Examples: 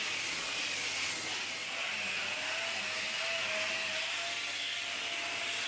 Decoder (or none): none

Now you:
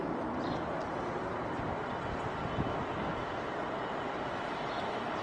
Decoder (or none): none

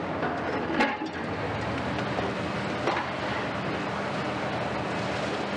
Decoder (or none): none